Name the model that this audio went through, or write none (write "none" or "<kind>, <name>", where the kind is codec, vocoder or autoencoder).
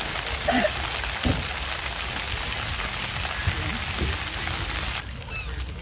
none